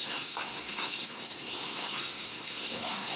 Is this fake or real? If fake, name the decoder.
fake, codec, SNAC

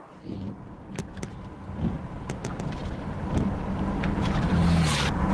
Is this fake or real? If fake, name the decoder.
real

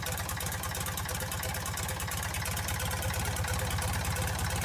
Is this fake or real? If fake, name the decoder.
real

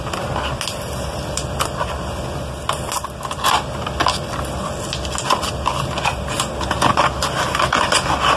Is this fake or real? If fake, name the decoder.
real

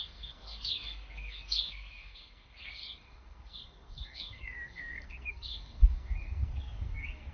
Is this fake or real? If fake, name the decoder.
fake, codec, SNAC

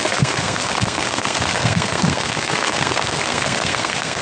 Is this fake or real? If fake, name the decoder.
fake, codec, SNAC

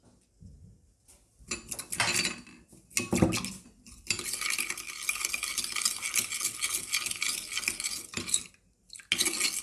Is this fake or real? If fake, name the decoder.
real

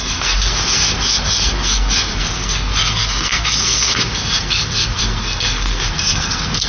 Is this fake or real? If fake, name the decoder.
fake, codec, SNAC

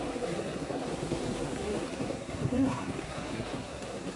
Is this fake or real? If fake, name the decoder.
fake, codec, SNAC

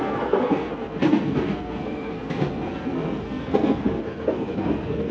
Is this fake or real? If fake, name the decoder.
fake, codec, SNAC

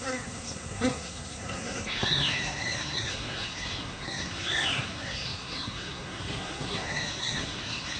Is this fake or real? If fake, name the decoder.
fake, codec, SNAC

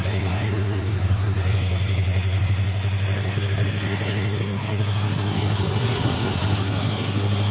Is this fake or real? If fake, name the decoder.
fake, codec, SNAC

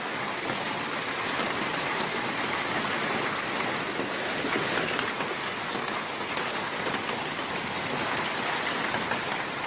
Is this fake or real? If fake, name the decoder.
real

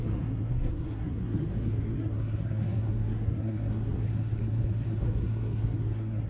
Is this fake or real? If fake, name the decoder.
fake, codec, SNAC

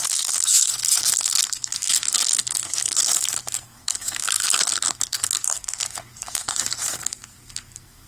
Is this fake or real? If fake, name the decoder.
fake, codec, SNAC